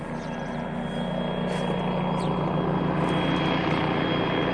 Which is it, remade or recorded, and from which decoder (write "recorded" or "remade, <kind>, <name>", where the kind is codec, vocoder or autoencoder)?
recorded